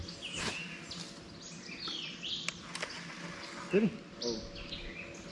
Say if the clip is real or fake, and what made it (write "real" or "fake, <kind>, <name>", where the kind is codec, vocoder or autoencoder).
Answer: real